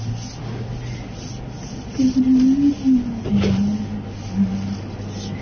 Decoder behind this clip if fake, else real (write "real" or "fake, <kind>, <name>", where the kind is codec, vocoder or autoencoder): real